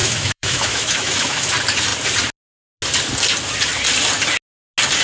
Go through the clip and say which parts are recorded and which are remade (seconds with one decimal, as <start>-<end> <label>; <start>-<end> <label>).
0.0-1.5 remade; 1.5-5.0 recorded